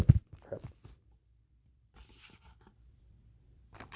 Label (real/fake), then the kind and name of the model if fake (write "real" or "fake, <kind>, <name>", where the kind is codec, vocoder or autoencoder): fake, vocoder, BigVGAN v2